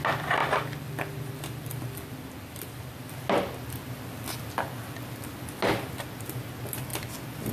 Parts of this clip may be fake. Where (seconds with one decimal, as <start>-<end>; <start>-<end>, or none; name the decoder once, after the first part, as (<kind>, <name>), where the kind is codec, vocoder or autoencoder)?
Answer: 0.4-3.1 (vocoder, BigVGAN v2)